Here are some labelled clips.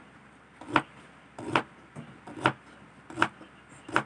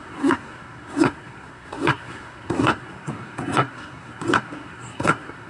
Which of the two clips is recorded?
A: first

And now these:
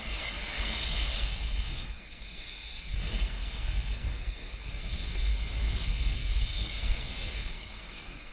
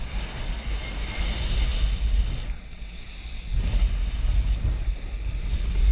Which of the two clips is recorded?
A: second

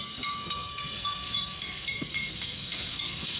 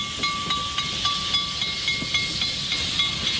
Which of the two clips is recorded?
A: second